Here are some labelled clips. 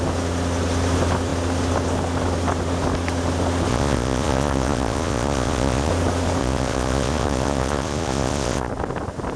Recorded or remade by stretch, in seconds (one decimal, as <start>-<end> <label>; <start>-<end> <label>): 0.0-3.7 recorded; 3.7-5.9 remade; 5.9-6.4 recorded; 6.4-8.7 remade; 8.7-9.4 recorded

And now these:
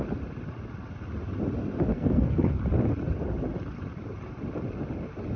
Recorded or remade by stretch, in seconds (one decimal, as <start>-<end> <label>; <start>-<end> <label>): 0.0-1.9 recorded; 1.9-2.6 remade; 2.6-5.4 recorded

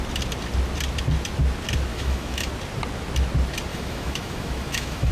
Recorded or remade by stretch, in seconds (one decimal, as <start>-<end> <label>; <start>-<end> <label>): 0.0-1.9 recorded; 1.9-2.5 remade; 2.5-3.7 recorded; 3.7-5.1 remade

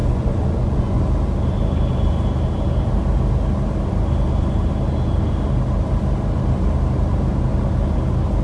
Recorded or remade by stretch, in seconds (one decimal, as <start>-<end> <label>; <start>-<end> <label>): 0.0-1.0 remade; 1.0-8.4 recorded

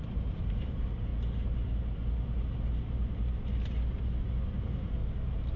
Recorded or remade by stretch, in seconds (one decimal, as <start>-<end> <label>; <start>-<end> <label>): 0.0-1.1 remade; 1.1-4.5 recorded; 4.5-5.0 remade; 5.0-5.6 recorded

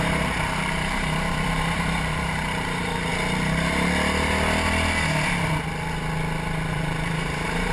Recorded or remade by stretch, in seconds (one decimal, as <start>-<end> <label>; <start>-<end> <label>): 0.0-3.1 remade; 3.1-6.7 recorded; 6.7-7.7 remade

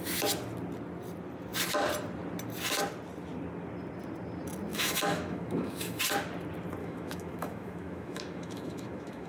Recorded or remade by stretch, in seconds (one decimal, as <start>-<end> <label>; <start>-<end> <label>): 0.0-4.7 recorded; 4.7-6.0 remade; 6.0-6.8 recorded; 6.8-9.3 remade

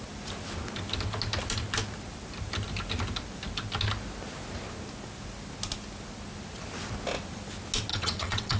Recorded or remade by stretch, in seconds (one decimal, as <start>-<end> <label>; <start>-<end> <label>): 0.0-7.9 recorded; 7.9-8.6 remade